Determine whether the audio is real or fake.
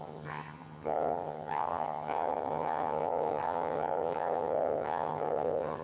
fake